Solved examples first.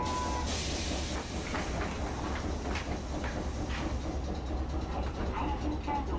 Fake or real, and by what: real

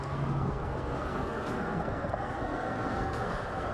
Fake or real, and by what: fake, codec, SNAC